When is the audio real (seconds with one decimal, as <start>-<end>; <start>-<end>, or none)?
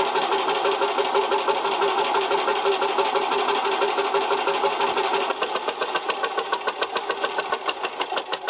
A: 0.0-8.5